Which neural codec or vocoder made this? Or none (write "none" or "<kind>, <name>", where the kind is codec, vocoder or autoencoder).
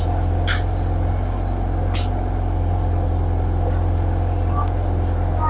none